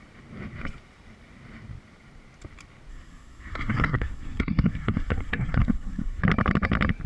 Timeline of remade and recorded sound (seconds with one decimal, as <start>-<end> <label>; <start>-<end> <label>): 0.0-2.9 recorded; 2.9-6.2 remade; 6.2-7.1 recorded